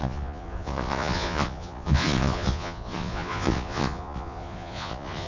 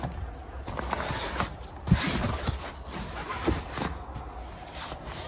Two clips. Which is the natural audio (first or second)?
second